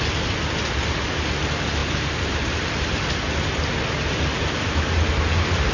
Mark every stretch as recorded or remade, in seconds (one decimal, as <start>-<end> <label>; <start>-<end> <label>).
0.0-1.8 recorded; 1.8-3.0 remade; 3.0-5.7 recorded